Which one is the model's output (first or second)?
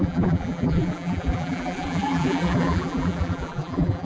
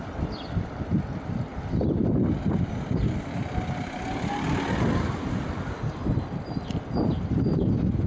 first